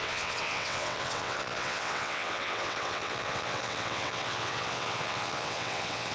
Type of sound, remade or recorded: remade